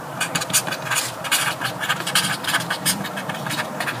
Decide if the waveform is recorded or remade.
remade